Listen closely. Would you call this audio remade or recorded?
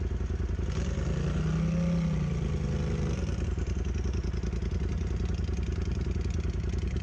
recorded